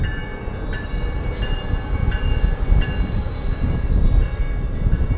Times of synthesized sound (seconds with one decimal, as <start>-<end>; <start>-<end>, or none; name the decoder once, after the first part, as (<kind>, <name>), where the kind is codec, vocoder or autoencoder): none